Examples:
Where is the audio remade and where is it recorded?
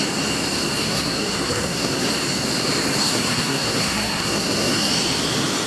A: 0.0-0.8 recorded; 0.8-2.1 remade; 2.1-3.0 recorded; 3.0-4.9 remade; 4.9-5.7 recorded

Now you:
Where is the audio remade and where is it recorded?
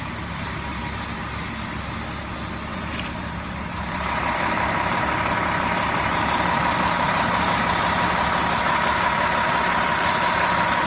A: 0.0-2.7 recorded; 2.7-7.6 remade; 7.6-10.9 recorded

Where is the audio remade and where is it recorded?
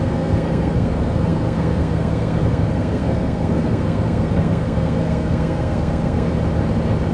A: 0.0-6.3 remade; 6.3-7.1 recorded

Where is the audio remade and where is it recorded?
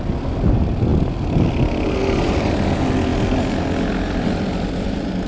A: 0.0-5.3 recorded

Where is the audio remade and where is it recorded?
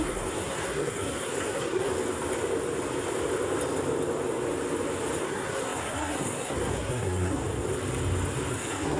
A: 0.0-1.9 remade; 1.9-5.2 recorded; 5.2-7.4 remade; 7.4-8.5 recorded; 8.5-9.0 remade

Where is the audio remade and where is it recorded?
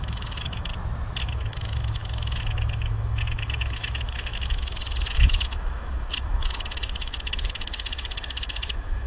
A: 0.0-0.7 remade; 0.7-1.2 recorded; 1.2-9.1 remade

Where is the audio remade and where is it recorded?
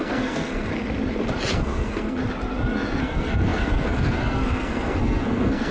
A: 0.0-0.7 remade; 0.7-1.5 recorded; 1.5-2.2 remade; 2.2-3.0 recorded; 3.0-5.7 remade